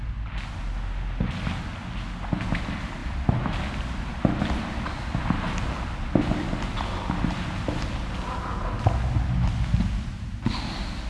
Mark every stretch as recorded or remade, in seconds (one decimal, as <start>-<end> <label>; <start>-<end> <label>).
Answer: 0.0-11.1 recorded